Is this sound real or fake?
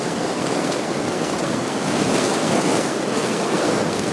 fake